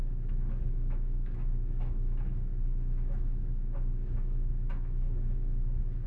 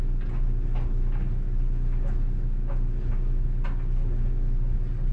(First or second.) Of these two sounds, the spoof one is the first